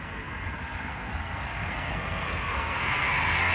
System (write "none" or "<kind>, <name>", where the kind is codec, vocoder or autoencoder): codec, SNAC